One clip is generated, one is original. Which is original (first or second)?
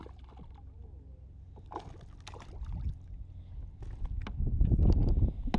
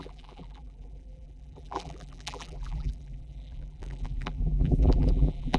first